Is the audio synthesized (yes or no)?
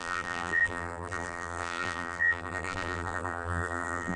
yes